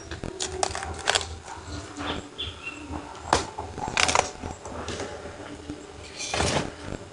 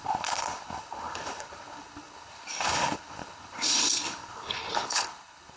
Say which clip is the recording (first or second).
first